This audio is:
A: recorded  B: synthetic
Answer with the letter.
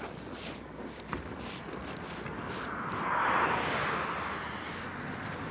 A